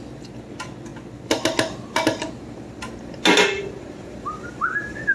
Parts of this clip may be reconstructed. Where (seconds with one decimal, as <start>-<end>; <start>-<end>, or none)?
none